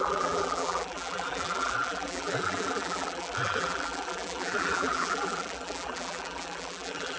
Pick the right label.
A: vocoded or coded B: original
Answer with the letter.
A